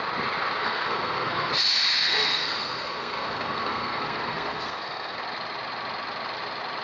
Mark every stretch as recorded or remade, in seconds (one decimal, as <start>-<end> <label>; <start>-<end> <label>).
0.0-0.6 recorded; 0.6-1.5 remade; 1.5-1.9 recorded; 1.9-5.2 remade; 5.2-6.8 recorded